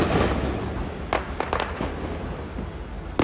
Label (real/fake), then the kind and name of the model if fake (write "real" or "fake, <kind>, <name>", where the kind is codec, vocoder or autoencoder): real